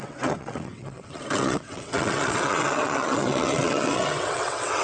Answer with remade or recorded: remade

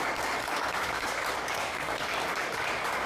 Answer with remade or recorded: remade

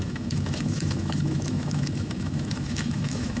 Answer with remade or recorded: remade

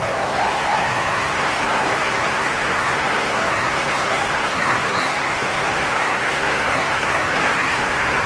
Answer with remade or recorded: remade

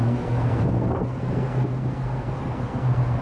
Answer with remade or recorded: remade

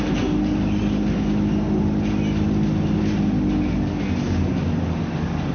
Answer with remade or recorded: recorded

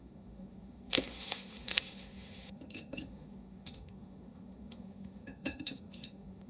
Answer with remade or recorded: remade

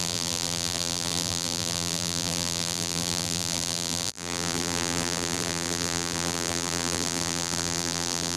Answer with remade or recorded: remade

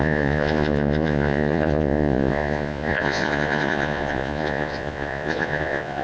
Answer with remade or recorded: remade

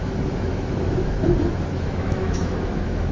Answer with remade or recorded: remade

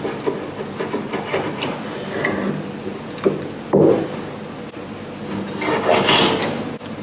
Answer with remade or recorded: recorded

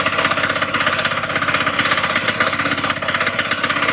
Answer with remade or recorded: recorded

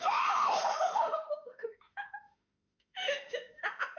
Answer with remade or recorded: remade